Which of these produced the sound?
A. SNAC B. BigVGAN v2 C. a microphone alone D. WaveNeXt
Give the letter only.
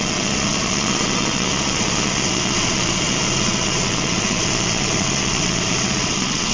D